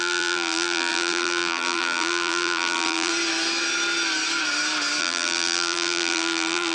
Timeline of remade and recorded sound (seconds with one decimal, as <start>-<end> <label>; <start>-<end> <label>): 0.0-3.1 remade; 3.1-5.0 recorded; 5.0-6.7 remade